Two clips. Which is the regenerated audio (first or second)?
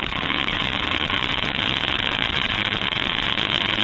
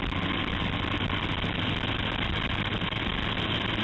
first